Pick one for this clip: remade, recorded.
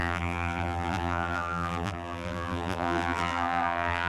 remade